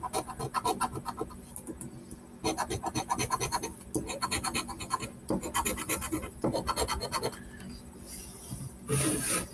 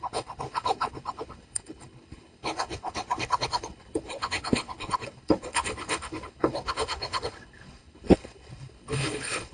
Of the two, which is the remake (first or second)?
second